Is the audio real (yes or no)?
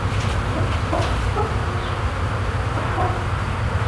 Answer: yes